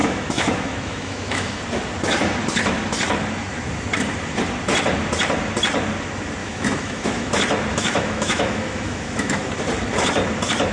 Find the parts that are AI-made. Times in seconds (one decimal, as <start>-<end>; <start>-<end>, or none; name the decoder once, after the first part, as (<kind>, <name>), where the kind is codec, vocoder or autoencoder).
0.0-1.6 (autoencoder, DAC-VAE); 6.4-7.3; 7.7-9.4